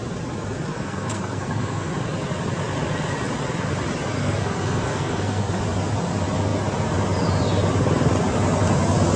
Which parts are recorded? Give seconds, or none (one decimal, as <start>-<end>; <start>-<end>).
0.0-0.7; 1.9-4.2; 5.6-9.2